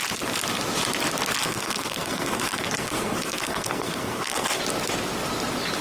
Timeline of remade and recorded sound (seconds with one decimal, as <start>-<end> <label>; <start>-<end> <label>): 0.0-1.4 recorded; 1.4-4.6 remade; 4.6-5.8 recorded

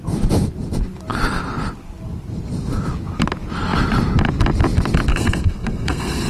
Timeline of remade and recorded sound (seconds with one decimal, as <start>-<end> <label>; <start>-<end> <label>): 0.0-5.1 recorded; 5.1-6.3 remade

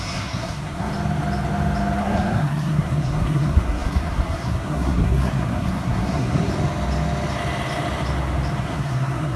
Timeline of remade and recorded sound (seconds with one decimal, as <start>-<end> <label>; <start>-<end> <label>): 0.0-0.9 remade; 0.9-2.0 recorded; 2.0-6.5 remade; 6.5-8.6 recorded; 8.6-9.4 remade

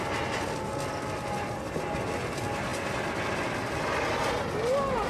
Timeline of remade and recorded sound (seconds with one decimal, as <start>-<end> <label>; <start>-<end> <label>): 0.0-5.1 recorded

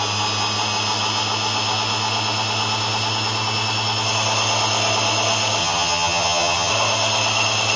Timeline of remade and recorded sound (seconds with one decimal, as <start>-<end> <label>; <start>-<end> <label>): 0.0-5.6 recorded; 5.6-6.7 remade; 6.7-7.8 recorded

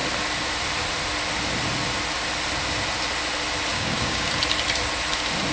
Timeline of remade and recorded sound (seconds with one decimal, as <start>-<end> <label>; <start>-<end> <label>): 0.0-3.7 recorded; 3.7-4.3 remade; 4.3-5.5 recorded

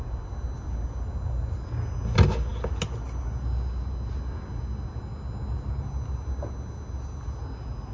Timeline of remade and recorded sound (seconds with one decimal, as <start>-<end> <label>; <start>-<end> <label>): 0.0-7.9 recorded

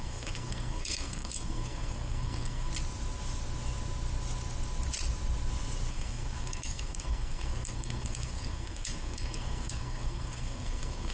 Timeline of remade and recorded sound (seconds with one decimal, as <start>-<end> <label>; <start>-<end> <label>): 0.0-2.7 remade; 2.7-5.9 recorded; 5.9-11.1 remade